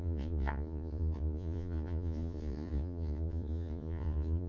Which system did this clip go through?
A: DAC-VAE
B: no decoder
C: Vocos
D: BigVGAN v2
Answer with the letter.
C